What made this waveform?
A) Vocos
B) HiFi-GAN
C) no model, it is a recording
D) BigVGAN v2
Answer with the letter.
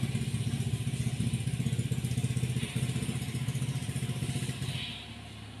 C